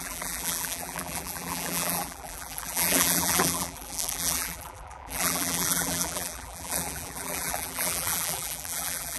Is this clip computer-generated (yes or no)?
yes